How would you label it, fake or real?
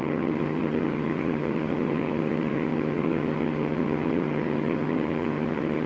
fake